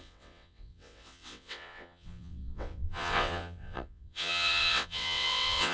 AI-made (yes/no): yes